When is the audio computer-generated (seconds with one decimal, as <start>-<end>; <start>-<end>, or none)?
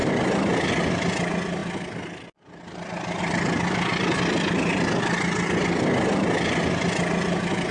0.0-0.7